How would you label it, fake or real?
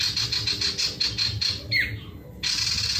real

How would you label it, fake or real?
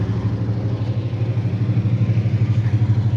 real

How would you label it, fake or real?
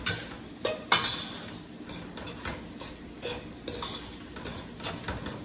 real